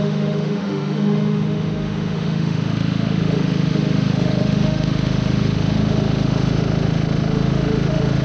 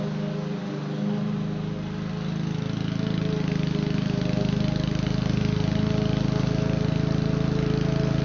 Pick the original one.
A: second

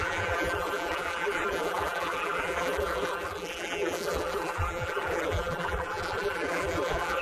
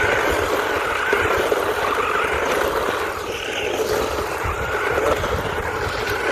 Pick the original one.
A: second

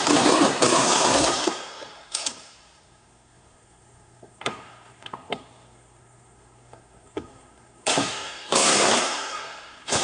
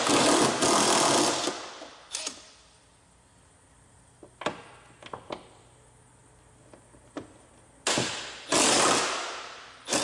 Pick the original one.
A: second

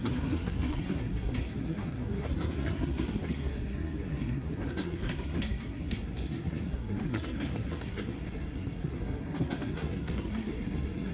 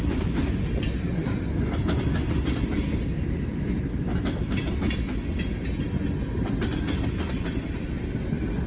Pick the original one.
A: second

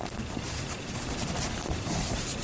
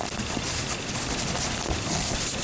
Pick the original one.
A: second